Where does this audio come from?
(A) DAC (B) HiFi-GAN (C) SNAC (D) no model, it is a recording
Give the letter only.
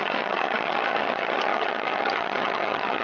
B